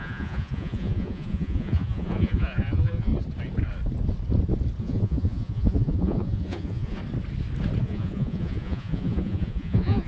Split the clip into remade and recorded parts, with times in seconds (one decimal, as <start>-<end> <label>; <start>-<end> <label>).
0.0-3.1 remade; 3.1-4.8 recorded; 4.8-7.0 remade; 7.0-7.8 recorded; 7.8-10.1 remade